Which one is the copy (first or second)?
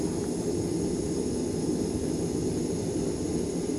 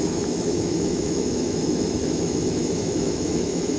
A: second